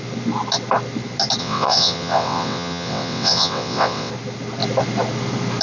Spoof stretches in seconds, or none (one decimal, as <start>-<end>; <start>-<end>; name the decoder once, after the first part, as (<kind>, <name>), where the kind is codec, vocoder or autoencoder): 1.4-4.1 (vocoder, WaveNeXt)